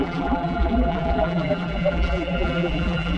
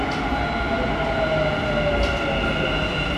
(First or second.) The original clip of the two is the second